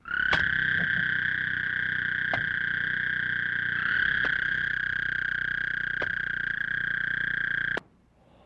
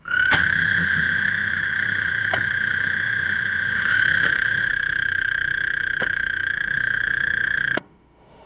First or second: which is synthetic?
second